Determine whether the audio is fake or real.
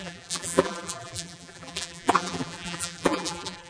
fake